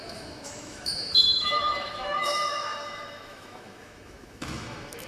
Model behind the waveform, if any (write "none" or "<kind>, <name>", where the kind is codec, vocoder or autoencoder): autoencoder, DAC-VAE